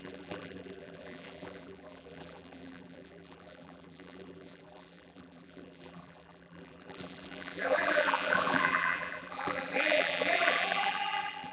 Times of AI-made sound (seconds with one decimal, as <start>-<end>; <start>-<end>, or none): 0.0-11.5